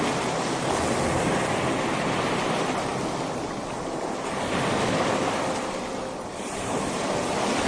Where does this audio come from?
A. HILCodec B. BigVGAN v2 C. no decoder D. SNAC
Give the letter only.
C